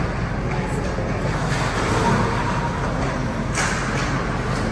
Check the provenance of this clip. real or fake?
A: real